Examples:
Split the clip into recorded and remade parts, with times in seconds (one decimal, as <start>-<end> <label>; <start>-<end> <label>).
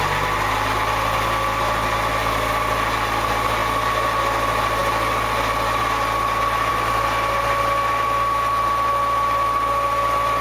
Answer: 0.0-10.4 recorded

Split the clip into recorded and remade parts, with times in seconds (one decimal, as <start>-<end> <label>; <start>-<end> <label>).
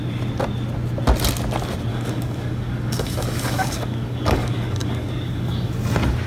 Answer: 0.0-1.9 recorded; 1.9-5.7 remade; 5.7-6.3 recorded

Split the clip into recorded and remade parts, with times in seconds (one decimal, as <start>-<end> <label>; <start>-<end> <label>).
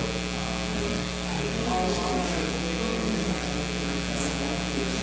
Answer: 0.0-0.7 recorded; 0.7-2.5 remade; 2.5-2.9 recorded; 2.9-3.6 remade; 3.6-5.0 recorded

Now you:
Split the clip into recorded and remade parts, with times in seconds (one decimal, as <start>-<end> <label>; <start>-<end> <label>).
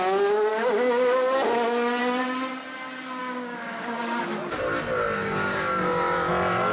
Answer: 0.0-0.5 recorded; 0.5-2.0 remade; 2.0-3.2 recorded; 3.2-4.2 remade; 4.2-5.2 recorded; 5.2-6.3 remade; 6.3-6.7 recorded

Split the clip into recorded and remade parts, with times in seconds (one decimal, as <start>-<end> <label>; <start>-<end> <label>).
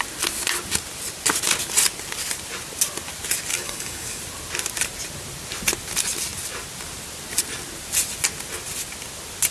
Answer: 0.0-3.5 recorded; 3.5-4.2 remade; 4.2-9.5 recorded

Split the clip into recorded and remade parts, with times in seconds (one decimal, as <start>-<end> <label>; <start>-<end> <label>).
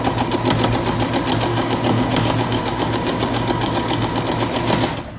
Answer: 0.0-1.5 recorded; 1.5-4.2 remade; 4.2-5.2 recorded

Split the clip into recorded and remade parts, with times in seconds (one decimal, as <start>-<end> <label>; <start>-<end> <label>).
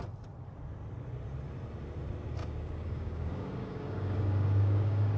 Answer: 0.0-2.4 recorded; 2.4-5.2 remade